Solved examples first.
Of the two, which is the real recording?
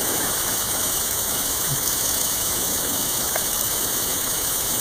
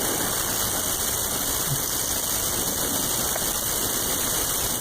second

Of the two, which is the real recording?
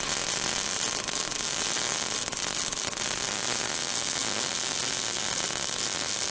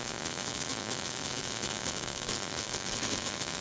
first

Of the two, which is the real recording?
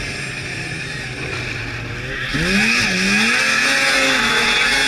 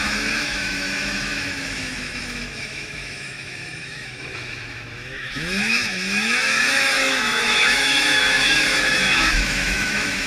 first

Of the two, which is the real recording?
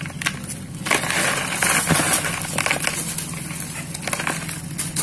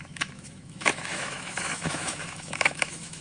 first